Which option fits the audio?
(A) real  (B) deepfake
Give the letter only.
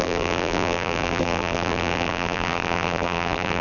B